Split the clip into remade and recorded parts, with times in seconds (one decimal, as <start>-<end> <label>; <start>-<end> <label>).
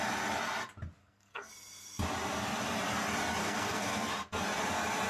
0.0-1.0 recorded; 1.0-1.5 remade; 1.5-3.4 recorded; 3.4-4.1 remade; 4.1-5.1 recorded